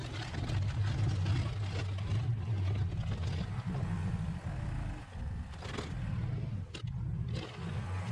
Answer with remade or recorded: recorded